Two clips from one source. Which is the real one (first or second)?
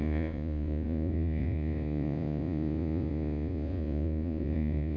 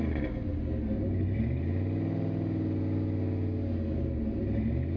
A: second